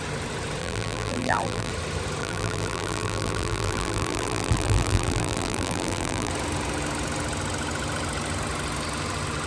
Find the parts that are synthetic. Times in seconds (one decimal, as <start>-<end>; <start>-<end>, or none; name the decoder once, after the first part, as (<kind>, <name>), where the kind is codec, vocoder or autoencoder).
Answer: 0.6-1.7 (vocoder, BigVGAN v2); 2.2-6.3

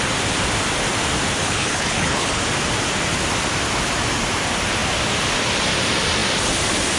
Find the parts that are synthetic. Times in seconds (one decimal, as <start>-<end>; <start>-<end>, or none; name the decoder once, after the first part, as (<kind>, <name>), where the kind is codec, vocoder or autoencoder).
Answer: 1.4-2.4 (codec, HILCodec)